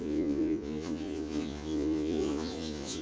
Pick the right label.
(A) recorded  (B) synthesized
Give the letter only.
B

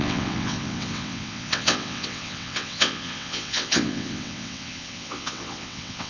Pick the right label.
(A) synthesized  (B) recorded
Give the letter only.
A